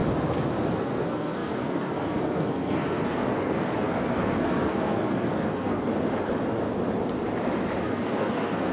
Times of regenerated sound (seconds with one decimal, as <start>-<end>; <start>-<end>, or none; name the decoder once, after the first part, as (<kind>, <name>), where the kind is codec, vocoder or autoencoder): 0.8-5.9 (codec, SNAC); 7.8-8.7